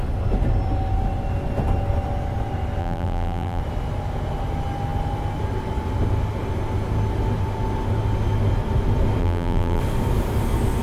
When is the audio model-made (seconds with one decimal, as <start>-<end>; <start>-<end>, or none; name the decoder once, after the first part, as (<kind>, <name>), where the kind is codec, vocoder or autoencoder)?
2.8-3.6 (vocoder, BigVGAN v2); 9.2-9.8